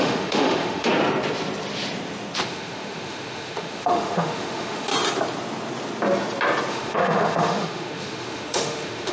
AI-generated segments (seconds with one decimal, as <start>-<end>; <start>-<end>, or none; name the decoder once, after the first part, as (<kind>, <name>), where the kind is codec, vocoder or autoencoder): 0.0-0.9 (autoencoder, DAC-VAE); 2.4-4.9; 6.7-9.1